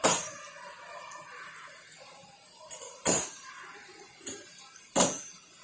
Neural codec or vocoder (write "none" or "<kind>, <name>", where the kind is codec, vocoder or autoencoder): none